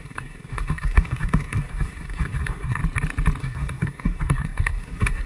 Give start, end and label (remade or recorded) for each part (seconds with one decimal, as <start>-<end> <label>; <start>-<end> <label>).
0.0-2.8 remade; 2.8-3.4 recorded; 3.4-5.3 remade